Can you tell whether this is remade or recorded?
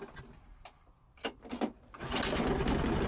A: recorded